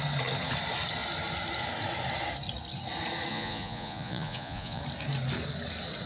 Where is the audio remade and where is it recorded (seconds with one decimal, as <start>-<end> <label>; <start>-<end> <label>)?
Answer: 0.0-3.3 recorded; 3.3-4.8 remade; 4.8-6.1 recorded

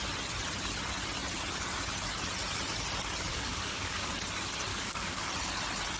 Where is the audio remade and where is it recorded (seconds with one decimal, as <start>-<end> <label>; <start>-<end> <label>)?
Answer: 0.0-3.3 recorded; 3.3-4.1 remade; 4.1-4.7 recorded; 4.7-5.3 remade; 5.3-6.0 recorded

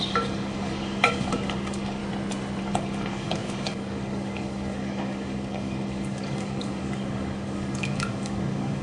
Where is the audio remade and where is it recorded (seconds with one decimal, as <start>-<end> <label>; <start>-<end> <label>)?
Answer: 0.0-2.0 remade; 2.0-2.6 recorded; 2.6-8.8 remade